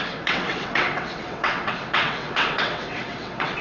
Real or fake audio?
fake